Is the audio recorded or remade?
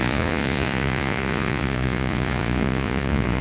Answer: remade